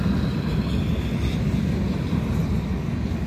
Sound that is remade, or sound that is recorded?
recorded